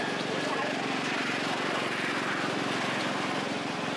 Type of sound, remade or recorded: recorded